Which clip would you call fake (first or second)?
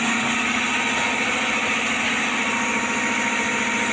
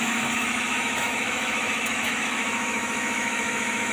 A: second